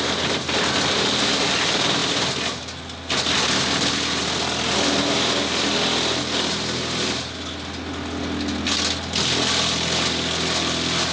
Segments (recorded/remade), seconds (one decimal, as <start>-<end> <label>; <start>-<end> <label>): 0.0-11.1 recorded